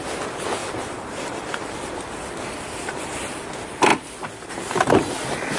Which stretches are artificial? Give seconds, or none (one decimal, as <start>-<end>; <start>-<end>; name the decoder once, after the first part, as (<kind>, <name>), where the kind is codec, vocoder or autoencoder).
0.6-1.9 (vocoder, BigVGAN v2)